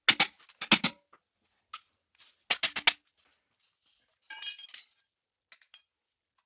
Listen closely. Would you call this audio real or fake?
real